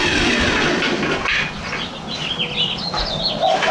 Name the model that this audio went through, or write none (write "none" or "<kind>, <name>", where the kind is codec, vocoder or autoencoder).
none